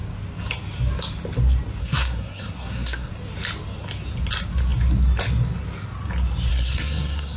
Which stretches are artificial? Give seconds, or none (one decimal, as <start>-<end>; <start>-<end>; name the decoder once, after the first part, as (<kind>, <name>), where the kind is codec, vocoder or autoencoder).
1.8-3.1 (codec, SNAC); 6.5-7.4